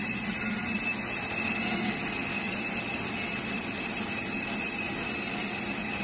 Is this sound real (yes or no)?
yes